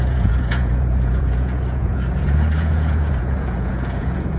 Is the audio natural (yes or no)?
no